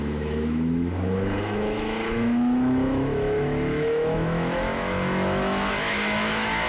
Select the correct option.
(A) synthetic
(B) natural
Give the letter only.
A